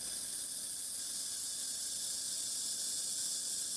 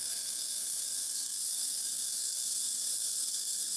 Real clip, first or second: first